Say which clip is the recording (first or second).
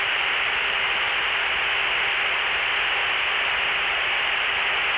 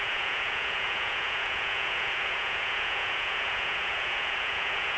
first